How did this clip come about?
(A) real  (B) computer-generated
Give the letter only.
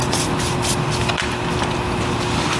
A